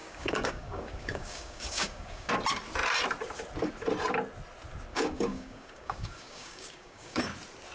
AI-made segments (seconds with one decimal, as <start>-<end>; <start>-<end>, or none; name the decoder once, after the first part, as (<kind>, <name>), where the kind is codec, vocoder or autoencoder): 0.0-2.3 (codec, DAC); 4.9-7.2